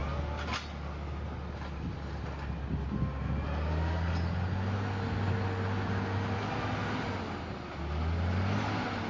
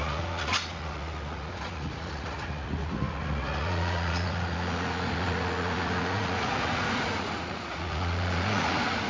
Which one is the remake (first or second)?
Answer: second